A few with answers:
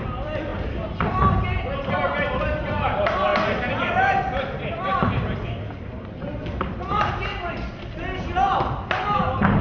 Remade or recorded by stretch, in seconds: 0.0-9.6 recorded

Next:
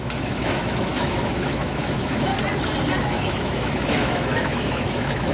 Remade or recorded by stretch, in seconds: 0.0-2.3 remade; 2.3-3.0 recorded; 3.0-5.3 remade

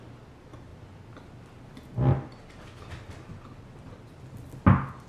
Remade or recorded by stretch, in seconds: 0.0-5.1 recorded

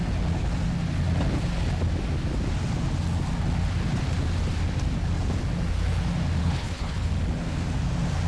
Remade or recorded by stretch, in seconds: 0.0-6.4 recorded; 6.4-7.1 remade; 7.1-8.3 recorded